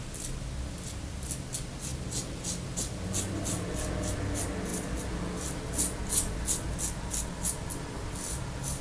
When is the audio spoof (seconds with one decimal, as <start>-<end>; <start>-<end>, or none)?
none